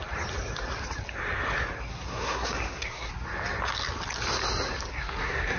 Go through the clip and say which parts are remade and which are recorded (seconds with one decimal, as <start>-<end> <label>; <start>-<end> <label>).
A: 0.0-1.9 recorded; 1.9-3.1 remade; 3.1-4.9 recorded; 4.9-5.6 remade